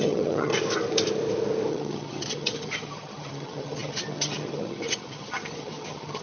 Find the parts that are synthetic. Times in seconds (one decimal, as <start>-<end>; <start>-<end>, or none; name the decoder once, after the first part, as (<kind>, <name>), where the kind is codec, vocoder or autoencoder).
0.0-0.5 (vocoder, HiFi-GAN); 1.7-6.2